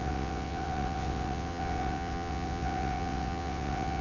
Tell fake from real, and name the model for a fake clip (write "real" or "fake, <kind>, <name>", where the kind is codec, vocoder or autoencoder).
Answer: fake, vocoder, WaveNeXt